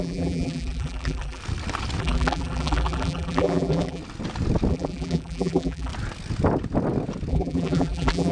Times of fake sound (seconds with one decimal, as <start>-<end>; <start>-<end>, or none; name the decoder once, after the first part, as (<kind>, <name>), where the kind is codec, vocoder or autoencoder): 0.0-1.4 (vocoder, BigVGAN v2); 2.0-4.0; 4.7-5.9; 7.3-8.3